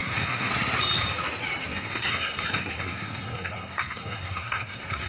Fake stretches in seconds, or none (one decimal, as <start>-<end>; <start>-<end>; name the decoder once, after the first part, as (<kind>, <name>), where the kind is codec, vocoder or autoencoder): 0.0-0.5 (codec, SNAC); 1.7-5.1